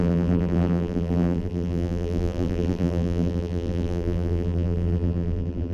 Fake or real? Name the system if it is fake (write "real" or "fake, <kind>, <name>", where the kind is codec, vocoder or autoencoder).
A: fake, vocoder, BigVGAN v2